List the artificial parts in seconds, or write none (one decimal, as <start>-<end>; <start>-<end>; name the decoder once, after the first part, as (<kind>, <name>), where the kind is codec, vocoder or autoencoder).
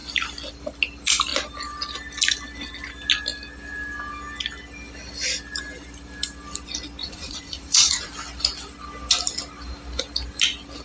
7.0-8.1 (vocoder, Vocos)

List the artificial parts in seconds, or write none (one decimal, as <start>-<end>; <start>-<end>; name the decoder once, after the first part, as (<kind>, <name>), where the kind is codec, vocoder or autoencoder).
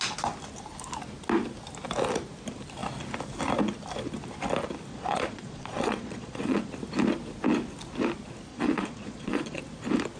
4.9-6.7 (vocoder, Vocos); 8.5-9.6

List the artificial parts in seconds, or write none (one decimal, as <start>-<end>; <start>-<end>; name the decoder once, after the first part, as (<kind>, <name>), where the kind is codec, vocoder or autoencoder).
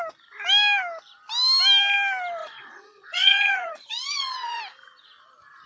2.4-4.6 (vocoder, Vocos)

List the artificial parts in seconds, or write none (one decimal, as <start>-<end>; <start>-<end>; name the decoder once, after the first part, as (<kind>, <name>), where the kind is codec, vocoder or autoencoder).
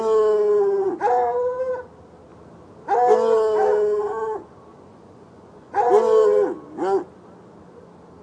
4.7-5.9 (vocoder, Vocos)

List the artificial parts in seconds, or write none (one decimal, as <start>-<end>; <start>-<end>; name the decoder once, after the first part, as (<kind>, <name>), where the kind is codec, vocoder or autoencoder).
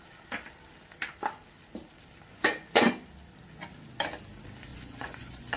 2.3-2.9 (vocoder, Vocos); 4.7-5.6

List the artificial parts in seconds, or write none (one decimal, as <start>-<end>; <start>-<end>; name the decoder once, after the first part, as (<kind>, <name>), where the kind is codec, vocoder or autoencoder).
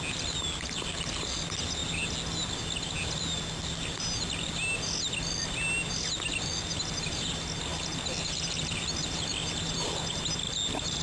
none